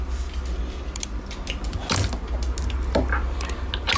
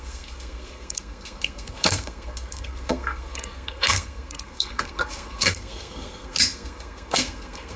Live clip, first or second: first